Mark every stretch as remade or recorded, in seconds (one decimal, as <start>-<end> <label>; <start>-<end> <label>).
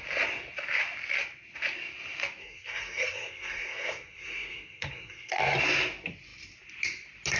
0.0-2.4 recorded; 2.4-5.4 remade; 5.4-7.4 recorded